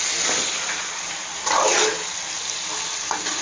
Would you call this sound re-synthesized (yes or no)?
no